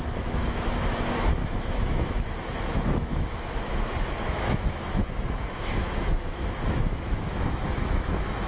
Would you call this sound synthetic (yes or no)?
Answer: yes